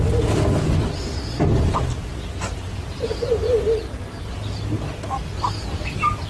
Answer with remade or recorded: recorded